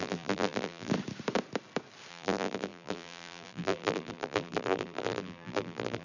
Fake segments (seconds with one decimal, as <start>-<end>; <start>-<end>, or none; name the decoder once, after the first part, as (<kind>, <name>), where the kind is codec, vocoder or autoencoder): 0.0-0.9 (vocoder, BigVGAN v2); 2.1-6.0